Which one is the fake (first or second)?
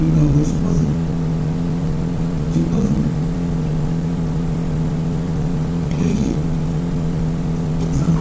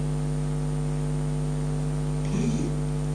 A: first